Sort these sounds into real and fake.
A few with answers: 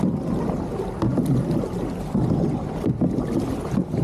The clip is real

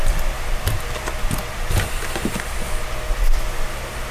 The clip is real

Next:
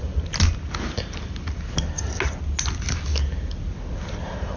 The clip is real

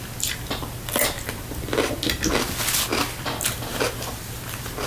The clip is real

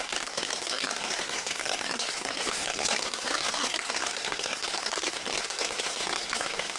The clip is fake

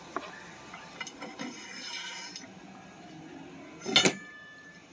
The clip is real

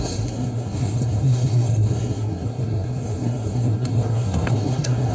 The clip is fake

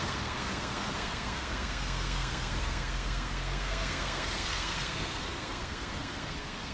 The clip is fake